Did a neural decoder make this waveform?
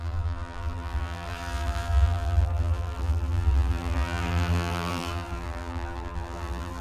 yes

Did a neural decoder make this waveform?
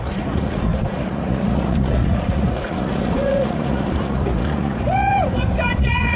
yes